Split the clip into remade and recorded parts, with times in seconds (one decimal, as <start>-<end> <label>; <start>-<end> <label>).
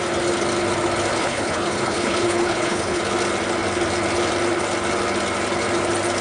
0.0-1.2 recorded; 1.2-3.0 remade; 3.0-6.2 recorded